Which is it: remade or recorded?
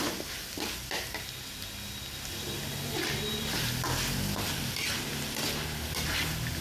recorded